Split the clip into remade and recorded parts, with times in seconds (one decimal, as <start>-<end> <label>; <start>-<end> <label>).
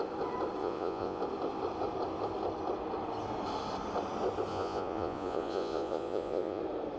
0.0-0.6 recorded; 0.6-1.2 remade; 1.2-4.5 recorded; 4.5-6.6 remade; 6.6-7.0 recorded